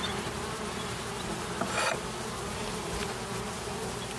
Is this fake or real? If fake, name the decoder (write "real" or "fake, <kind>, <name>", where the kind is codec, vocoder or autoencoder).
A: real